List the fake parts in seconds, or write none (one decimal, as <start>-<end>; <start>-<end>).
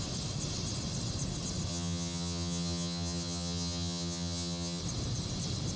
1.7-4.8